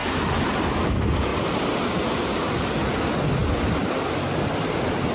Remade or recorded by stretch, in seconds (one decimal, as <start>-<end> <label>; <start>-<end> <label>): 0.0-5.1 recorded